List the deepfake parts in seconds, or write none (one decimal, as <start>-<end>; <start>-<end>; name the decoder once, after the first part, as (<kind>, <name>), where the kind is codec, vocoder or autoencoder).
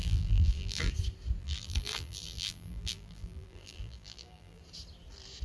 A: 0.0-0.9 (vocoder, BigVGAN v2); 1.4-4.6